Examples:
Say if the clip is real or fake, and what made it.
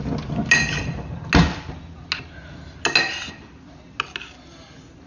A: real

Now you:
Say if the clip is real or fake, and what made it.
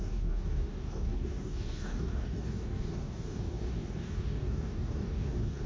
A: fake, codec, DAC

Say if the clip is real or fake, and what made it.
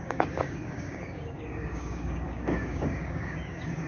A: fake, codec, DAC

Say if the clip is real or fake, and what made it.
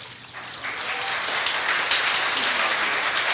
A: real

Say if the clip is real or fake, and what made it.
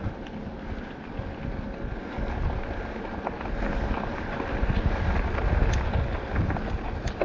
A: real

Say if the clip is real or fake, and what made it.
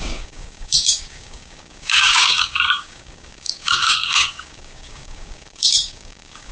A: fake, codec, DAC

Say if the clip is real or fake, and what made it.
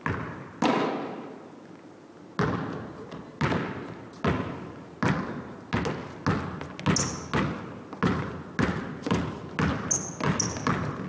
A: real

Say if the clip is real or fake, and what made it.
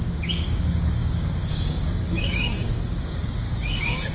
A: fake, codec, DAC